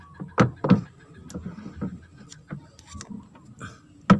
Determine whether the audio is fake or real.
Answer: real